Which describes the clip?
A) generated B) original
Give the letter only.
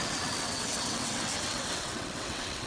A